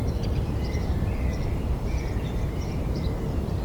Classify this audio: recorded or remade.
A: remade